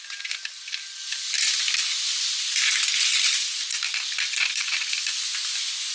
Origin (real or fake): real